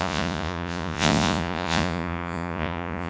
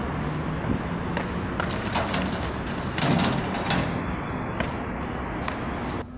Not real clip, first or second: first